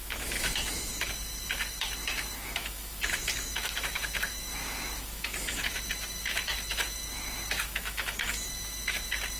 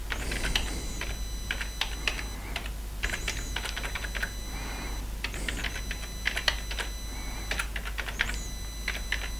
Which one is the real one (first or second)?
second